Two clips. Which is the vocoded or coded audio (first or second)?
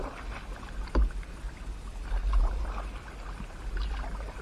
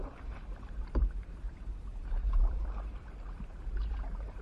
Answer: second